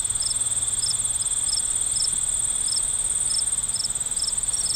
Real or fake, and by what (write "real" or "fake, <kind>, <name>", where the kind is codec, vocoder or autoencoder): real